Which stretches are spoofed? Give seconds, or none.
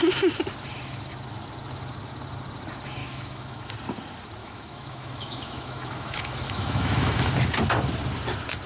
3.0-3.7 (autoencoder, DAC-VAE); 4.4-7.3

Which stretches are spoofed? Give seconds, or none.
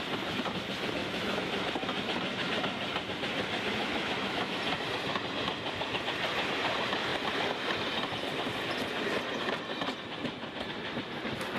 1.0-1.5 (autoencoder, DAC-VAE); 3.8-4.6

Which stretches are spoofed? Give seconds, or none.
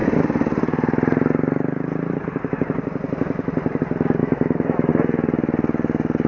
4.2-4.9 (autoencoder, DAC-VAE)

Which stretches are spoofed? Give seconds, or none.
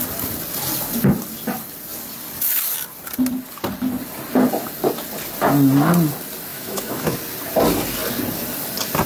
6.5-7.2 (autoencoder, DAC-VAE)